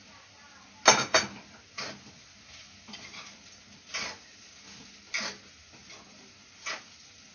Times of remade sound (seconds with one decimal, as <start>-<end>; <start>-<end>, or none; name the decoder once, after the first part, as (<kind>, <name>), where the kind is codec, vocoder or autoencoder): none